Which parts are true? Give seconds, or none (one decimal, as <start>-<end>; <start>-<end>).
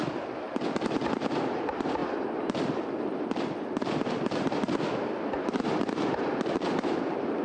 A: 0.0-7.4